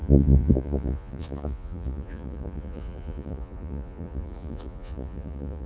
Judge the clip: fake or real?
fake